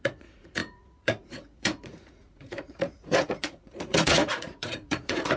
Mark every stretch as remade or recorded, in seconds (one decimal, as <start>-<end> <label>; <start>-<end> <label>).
0.0-5.4 remade